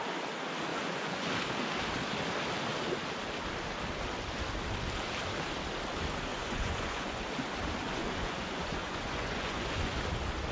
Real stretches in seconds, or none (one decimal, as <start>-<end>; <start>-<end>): 0.0-0.7; 1.3-6.3; 7.2-7.8; 10.0-10.5